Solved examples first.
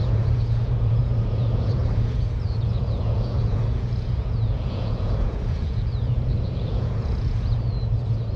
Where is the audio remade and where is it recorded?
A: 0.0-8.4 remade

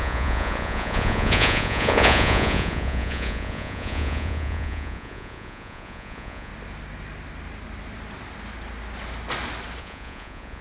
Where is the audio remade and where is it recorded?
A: 0.0-6.5 remade; 6.5-9.8 recorded; 9.8-10.6 remade

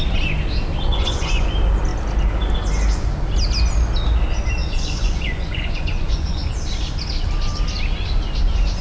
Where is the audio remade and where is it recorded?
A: 0.0-0.9 recorded; 0.9-1.5 remade; 1.5-4.6 recorded; 4.6-6.5 remade; 6.5-8.8 recorded

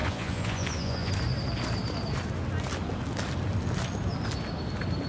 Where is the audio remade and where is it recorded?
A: 0.0-1.1 remade; 1.1-5.1 recorded

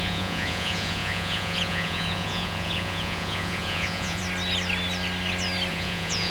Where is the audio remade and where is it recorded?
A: 0.0-4.2 remade; 4.2-5.7 recorded; 5.7-6.3 remade